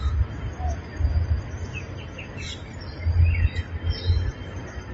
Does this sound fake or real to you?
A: real